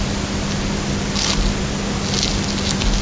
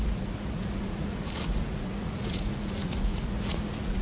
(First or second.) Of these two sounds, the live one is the first